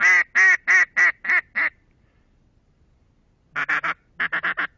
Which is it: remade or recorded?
recorded